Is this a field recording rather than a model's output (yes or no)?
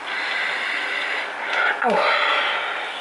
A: yes